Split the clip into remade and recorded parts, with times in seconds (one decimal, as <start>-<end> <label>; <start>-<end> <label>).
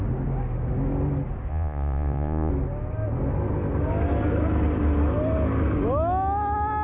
0.0-1.5 recorded; 1.5-2.5 remade; 2.5-6.8 recorded